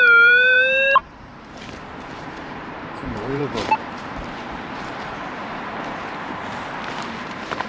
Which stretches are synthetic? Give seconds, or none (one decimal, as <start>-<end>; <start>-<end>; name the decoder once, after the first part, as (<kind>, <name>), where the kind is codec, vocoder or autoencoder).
0.0-6.4 (vocoder, BigVGAN v2); 7.2-7.7